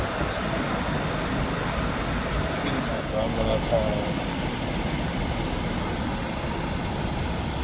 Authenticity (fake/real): real